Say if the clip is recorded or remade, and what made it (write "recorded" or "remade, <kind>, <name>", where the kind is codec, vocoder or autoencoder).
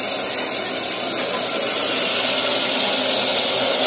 recorded